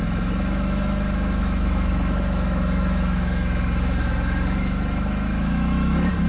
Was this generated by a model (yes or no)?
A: yes